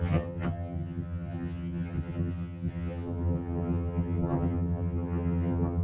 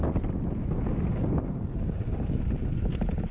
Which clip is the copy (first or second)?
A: first